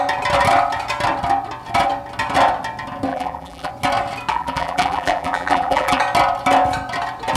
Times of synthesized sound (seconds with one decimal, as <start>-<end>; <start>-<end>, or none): 3.1-3.7; 4.3-6.0